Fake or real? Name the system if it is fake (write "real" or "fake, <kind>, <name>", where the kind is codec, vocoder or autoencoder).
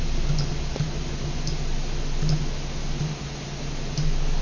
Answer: real